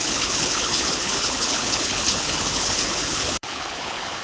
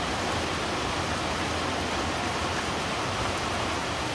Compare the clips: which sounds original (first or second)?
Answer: second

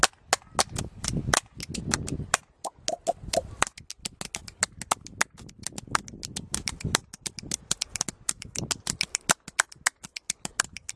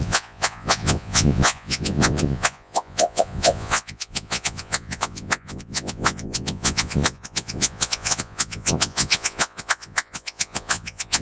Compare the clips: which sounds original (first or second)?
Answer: first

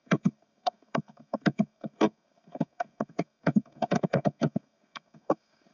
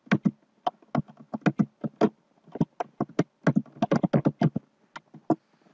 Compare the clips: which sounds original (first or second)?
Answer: second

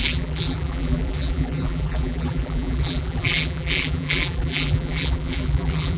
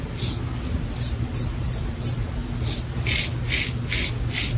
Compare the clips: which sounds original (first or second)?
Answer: second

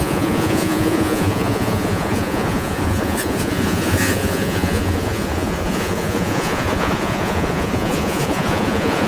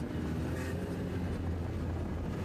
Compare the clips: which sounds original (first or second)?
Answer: second